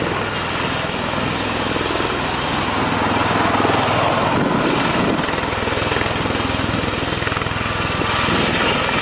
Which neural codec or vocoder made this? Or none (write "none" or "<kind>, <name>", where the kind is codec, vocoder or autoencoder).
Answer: none